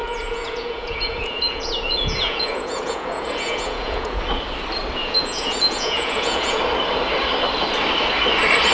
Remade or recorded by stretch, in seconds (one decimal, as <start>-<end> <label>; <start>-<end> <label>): 0.0-4.2 remade; 4.2-5.0 recorded; 5.0-6.6 remade; 6.6-8.7 recorded